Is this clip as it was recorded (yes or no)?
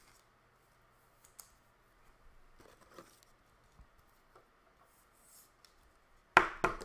yes